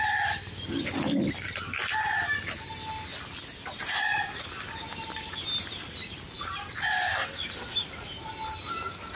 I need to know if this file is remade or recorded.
recorded